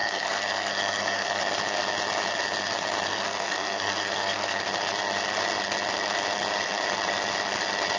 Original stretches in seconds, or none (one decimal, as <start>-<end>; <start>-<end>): 1.4-3.1; 4.6-8.0